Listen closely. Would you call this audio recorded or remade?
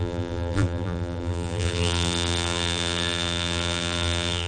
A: remade